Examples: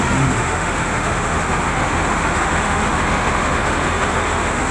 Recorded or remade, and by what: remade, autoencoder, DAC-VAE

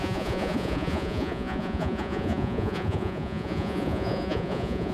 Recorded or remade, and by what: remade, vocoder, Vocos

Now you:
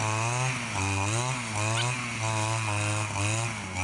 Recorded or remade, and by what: recorded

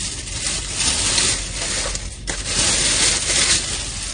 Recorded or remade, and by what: recorded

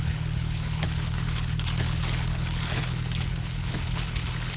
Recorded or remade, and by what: remade, codec, HILCodec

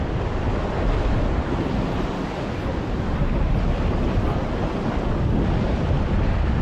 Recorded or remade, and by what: recorded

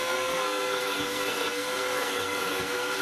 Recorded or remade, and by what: remade, codec, SNAC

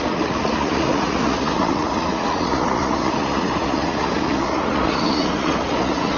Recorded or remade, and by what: remade, vocoder, Vocos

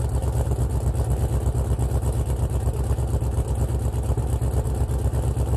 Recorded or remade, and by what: recorded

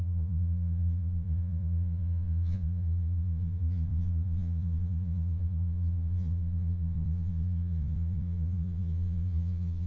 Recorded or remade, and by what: remade, vocoder, Vocos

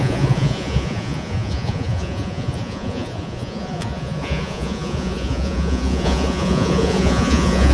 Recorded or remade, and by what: remade, vocoder, Vocos